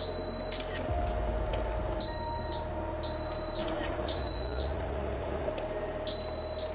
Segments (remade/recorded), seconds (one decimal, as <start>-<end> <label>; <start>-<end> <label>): 0.0-3.6 recorded; 3.6-5.5 remade; 5.5-6.7 recorded